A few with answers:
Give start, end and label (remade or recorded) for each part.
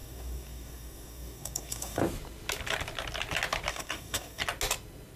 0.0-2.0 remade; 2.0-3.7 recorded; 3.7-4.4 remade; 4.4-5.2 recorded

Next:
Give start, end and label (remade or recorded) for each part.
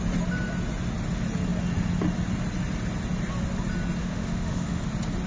0.0-4.0 recorded; 4.0-4.8 remade; 4.8-5.3 recorded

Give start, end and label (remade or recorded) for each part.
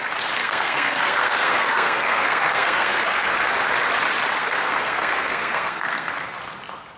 0.0-0.4 recorded; 0.4-3.3 remade; 3.3-4.4 recorded; 4.4-6.1 remade; 6.1-7.0 recorded